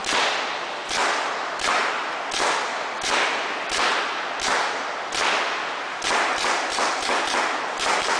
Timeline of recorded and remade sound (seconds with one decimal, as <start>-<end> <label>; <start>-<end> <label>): 0.0-8.2 recorded